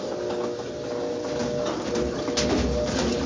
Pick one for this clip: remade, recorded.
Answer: recorded